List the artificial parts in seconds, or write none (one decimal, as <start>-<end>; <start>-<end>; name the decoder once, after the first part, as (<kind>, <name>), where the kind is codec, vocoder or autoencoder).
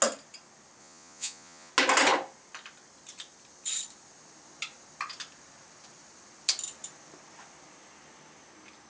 0.8-1.7 (vocoder, Vocos)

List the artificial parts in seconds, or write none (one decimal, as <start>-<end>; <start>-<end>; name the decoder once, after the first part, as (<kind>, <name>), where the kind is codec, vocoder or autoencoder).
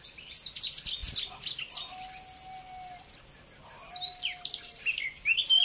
none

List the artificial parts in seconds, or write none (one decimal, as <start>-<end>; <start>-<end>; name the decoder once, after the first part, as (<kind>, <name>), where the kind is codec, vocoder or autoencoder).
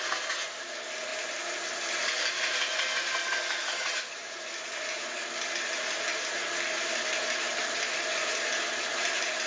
none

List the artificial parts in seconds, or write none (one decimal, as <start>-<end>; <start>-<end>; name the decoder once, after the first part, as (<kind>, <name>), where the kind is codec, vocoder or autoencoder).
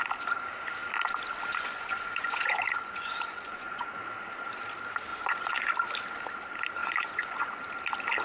1.5-3.9 (vocoder, Vocos); 5.1-5.7; 6.8-7.6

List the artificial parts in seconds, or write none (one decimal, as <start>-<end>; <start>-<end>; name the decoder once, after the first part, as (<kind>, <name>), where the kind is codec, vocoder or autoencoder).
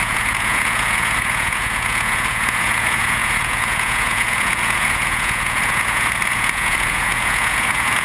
0.0-8.0 (vocoder, Vocos)